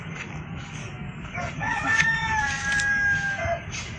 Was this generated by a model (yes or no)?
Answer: yes